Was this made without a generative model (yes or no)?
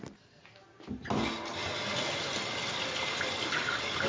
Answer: yes